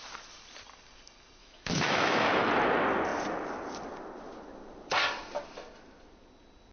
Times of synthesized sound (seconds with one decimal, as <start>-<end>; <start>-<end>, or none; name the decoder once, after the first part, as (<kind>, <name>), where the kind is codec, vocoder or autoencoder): 1.4-2.5 (autoencoder, DAC-VAE)